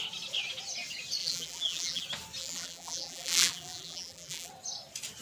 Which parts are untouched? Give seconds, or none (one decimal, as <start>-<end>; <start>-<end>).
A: 0.0-1.2; 2.0-2.4; 4.5-5.2